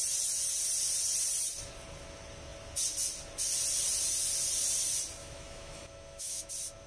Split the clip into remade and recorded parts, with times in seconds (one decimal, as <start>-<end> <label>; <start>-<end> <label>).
0.0-5.2 recorded; 5.2-6.5 remade; 6.5-6.9 recorded